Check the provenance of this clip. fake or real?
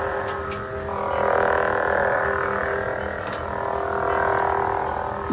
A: real